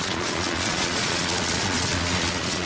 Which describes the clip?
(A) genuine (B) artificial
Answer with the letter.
B